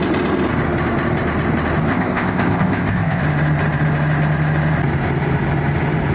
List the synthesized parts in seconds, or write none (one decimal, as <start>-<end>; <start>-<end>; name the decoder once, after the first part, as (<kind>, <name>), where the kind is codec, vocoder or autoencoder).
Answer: 1.9-3.2 (codec, ZipCodec)